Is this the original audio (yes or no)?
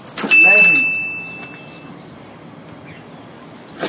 yes